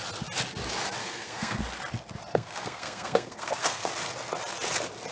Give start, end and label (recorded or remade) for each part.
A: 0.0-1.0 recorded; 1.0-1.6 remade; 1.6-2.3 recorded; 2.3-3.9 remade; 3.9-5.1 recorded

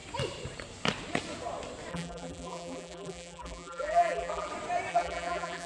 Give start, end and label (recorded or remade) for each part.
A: 0.0-1.9 recorded; 1.9-4.5 remade; 4.5-4.9 recorded; 4.9-5.7 remade

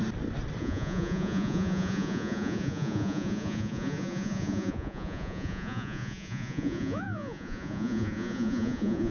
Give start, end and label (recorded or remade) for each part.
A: 0.0-0.6 recorded; 0.6-9.1 remade

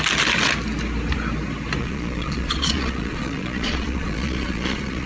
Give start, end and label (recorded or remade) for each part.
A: 0.0-1.8 recorded; 1.8-5.1 remade

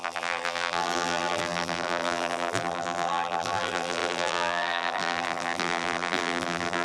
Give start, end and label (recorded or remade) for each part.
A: 0.0-6.8 remade